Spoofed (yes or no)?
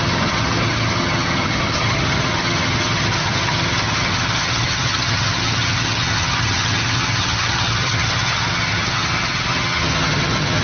yes